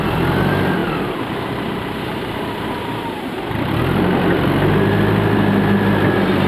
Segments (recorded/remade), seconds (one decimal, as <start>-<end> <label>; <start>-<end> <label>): 0.0-0.8 recorded; 0.8-4.7 remade; 4.7-6.5 recorded